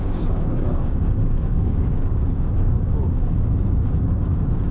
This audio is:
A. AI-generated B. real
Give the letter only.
A